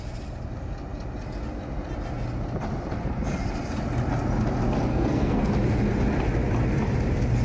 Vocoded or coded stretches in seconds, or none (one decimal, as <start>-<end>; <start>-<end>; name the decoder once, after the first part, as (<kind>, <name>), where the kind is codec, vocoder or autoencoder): 4.9-5.5 (codec, SNAC)